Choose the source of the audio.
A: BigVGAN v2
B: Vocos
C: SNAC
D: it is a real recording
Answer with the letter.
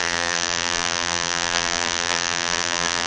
A